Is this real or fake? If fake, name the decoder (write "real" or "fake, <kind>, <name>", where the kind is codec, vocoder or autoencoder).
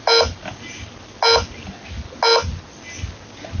real